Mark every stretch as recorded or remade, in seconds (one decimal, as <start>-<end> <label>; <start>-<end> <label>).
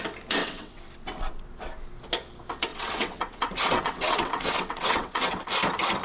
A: 0.0-0.4 recorded; 0.4-1.2 remade; 1.2-2.7 recorded; 2.7-5.4 remade; 5.4-6.0 recorded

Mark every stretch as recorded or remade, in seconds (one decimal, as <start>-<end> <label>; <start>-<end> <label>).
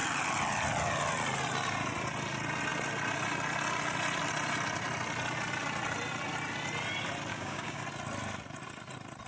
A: 0.0-7.3 recorded; 7.3-7.8 remade; 7.8-9.3 recorded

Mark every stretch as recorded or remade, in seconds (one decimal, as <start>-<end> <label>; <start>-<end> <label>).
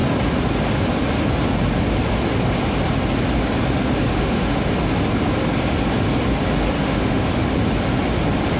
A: 0.0-4.1 recorded; 4.1-4.7 remade; 4.7-6.8 recorded; 6.8-7.4 remade; 7.4-8.6 recorded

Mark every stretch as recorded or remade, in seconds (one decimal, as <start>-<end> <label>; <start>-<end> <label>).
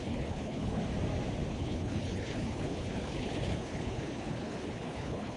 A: 0.0-0.8 remade; 0.8-1.5 recorded; 1.5-5.4 remade